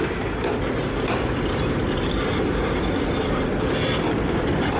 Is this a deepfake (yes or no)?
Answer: no